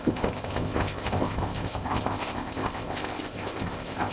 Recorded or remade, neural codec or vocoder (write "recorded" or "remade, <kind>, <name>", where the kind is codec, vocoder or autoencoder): remade, codec, ZipCodec